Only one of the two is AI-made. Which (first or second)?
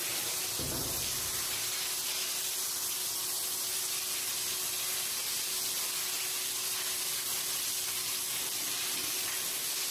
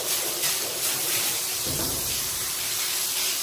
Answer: second